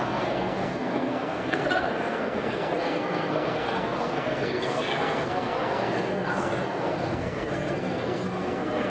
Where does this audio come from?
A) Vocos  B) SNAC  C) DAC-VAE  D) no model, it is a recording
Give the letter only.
B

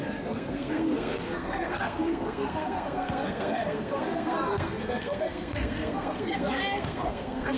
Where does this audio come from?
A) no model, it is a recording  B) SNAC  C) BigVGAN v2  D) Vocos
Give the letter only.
B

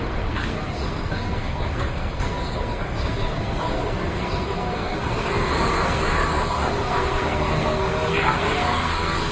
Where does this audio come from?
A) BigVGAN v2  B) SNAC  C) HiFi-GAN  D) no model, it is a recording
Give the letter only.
B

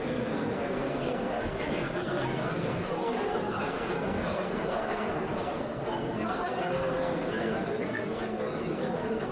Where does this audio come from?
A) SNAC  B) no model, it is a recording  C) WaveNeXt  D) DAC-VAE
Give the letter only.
A